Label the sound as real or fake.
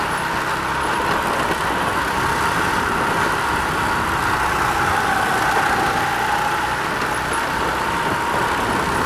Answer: real